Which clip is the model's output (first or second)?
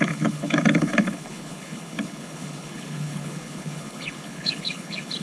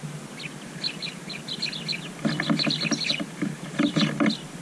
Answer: first